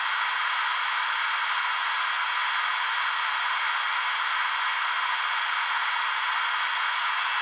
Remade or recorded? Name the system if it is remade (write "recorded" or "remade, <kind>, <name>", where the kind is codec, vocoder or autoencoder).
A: recorded